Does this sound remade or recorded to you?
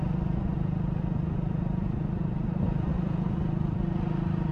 recorded